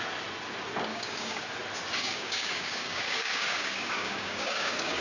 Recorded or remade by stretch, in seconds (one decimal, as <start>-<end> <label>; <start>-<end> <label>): 0.0-0.9 recorded; 0.9-1.4 remade; 1.4-2.0 recorded; 2.0-5.0 remade